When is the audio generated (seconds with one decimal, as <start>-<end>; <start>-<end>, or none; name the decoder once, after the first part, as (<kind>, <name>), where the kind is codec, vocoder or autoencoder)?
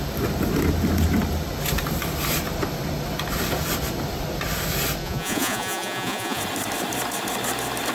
5.0-6.4 (vocoder, Vocos)